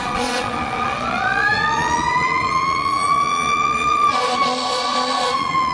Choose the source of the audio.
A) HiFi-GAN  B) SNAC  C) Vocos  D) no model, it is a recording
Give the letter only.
C